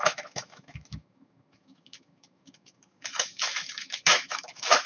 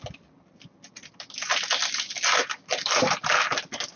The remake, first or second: first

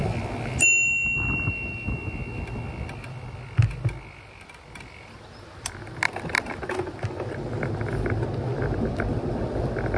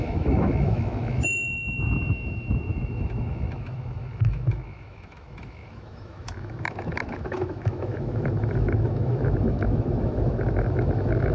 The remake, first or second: second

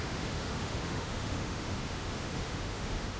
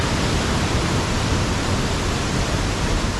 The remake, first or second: first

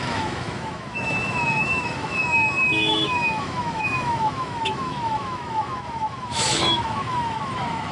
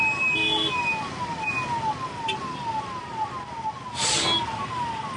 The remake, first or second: first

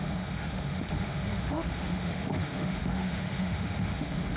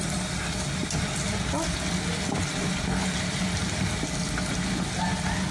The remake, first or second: first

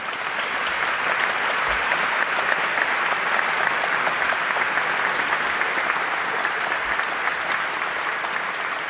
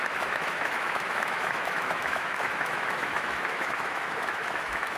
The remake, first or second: second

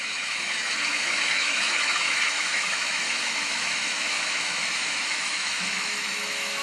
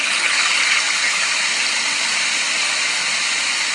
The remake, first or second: first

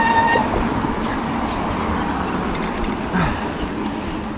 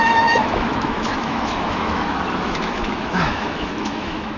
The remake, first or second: second